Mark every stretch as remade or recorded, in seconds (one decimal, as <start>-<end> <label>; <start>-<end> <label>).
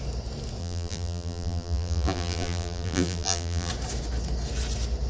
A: 0.0-0.6 recorded; 0.6-3.7 remade; 3.7-5.1 recorded